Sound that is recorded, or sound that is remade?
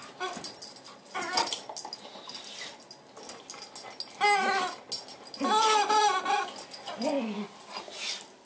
recorded